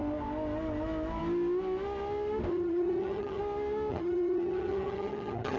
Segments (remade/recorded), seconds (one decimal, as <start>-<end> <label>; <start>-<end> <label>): 0.0-2.5 recorded; 2.5-3.4 remade; 3.4-3.9 recorded; 3.9-5.6 remade